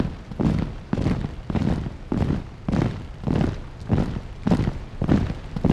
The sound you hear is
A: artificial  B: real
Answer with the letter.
B